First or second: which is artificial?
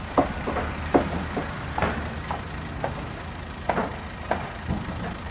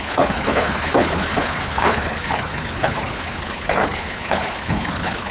second